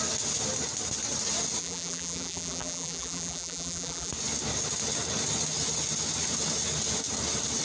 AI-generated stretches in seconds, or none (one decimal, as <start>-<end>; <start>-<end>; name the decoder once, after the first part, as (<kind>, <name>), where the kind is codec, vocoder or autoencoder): 1.6-4.1 (vocoder, BigVGAN v2)